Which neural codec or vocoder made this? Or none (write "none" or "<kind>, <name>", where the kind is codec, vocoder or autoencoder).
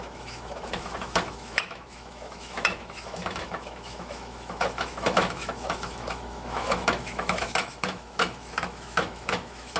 autoencoder, DAC-VAE